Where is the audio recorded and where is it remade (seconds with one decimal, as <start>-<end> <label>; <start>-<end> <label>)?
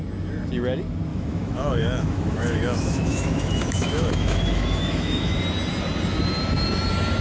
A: 0.0-1.1 recorded; 1.1-5.4 remade; 5.4-7.2 recorded